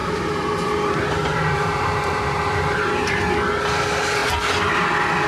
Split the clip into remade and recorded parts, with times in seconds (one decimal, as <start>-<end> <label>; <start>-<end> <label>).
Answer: 0.0-3.2 remade; 3.2-5.3 recorded